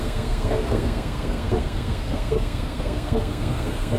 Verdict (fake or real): fake